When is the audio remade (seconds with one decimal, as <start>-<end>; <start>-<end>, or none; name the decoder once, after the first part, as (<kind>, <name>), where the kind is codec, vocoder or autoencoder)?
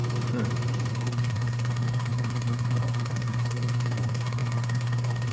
0.9-5.3 (codec, SNAC)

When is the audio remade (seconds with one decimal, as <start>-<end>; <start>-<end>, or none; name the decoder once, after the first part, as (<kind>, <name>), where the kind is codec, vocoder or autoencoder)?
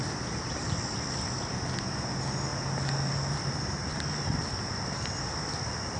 none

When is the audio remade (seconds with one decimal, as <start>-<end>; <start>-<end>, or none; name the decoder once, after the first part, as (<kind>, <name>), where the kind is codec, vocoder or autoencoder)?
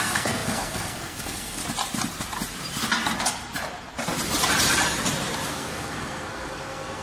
0.0-1.6 (codec, SNAC); 5.5-7.0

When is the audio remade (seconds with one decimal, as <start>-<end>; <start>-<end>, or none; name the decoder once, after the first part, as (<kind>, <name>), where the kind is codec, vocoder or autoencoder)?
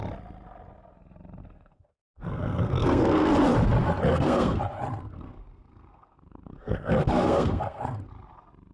1.4-3.3 (codec, SNAC); 4.1-4.6; 5.0-8.1